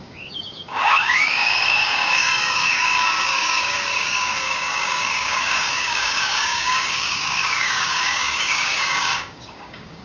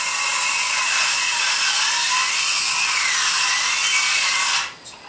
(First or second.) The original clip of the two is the second